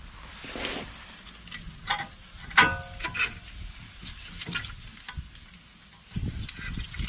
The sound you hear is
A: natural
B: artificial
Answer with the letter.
A